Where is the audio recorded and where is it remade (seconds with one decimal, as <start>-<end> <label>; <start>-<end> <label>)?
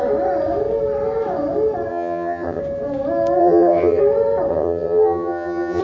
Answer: 0.0-1.9 recorded; 1.9-2.6 remade; 2.6-3.4 recorded; 3.4-4.0 remade; 4.0-4.5 recorded; 4.5-5.8 remade